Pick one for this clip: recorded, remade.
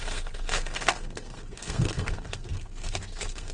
remade